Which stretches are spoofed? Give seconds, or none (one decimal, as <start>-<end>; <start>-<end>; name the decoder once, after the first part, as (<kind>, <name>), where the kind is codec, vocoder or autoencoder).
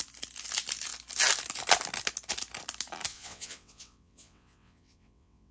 3.1-5.5 (vocoder, WaveNeXt)